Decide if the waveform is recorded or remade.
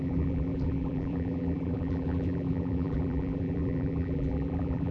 remade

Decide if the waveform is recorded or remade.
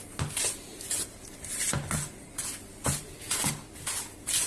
recorded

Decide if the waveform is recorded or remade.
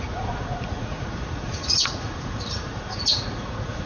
remade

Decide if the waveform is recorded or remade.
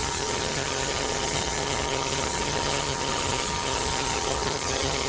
remade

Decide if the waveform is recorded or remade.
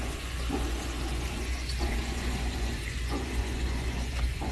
remade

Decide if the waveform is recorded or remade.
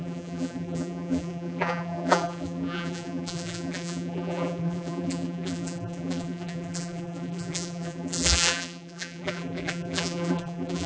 remade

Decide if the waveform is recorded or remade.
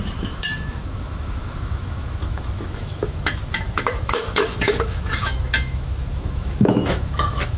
remade